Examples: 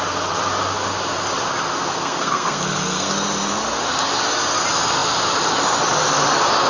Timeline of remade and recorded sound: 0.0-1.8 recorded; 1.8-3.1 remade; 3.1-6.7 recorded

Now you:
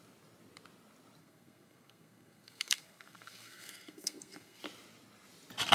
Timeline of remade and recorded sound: 0.0-1.2 recorded; 1.2-4.6 remade; 4.6-5.7 recorded

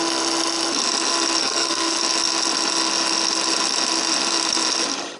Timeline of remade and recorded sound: 0.0-1.4 recorded; 1.4-2.0 remade; 2.0-5.2 recorded

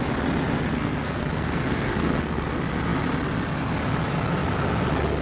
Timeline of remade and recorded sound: 0.0-0.7 recorded; 0.7-2.5 remade; 2.5-5.2 recorded

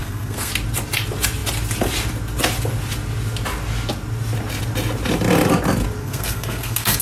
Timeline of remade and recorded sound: 0.0-0.5 remade; 0.5-6.0 recorded; 6.0-7.0 remade

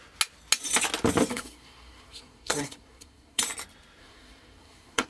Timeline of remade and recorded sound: 0.0-1.3 recorded; 1.3-3.4 remade; 3.4-4.0 recorded; 4.0-5.1 remade

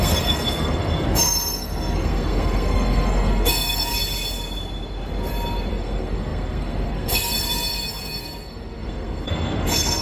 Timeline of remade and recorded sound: 0.0-3.9 remade; 3.9-5.7 recorded; 5.7-10.0 remade

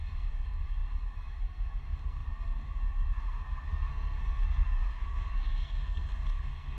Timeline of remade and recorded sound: 0.0-6.8 remade